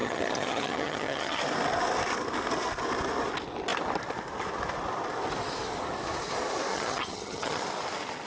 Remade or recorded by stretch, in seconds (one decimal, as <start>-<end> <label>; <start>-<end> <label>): 0.0-1.4 remade; 1.4-6.7 recorded; 6.7-7.6 remade; 7.6-8.3 recorded